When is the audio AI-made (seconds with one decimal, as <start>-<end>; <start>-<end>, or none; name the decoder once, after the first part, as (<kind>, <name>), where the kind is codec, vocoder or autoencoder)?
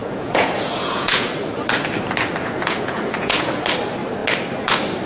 0.0-1.3 (vocoder, Vocos); 2.4-3.6